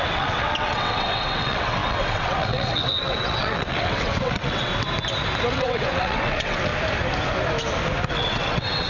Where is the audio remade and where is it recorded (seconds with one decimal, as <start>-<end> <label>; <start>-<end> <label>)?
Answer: 0.0-4.7 remade; 4.7-5.5 recorded; 5.5-6.7 remade; 6.7-8.1 recorded; 8.1-8.9 remade